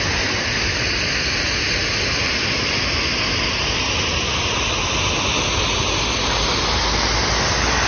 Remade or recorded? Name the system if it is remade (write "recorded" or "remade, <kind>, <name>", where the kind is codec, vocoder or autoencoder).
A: recorded